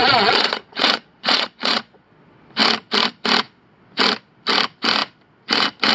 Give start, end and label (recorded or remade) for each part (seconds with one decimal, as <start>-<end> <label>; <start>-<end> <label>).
0.0-2.1 remade; 2.1-5.9 recorded